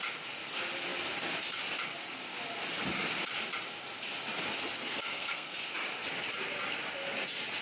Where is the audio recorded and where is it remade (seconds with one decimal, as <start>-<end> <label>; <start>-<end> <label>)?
0.0-4.8 recorded; 4.8-5.6 remade; 5.6-7.6 recorded